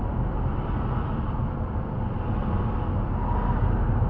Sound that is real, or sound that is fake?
real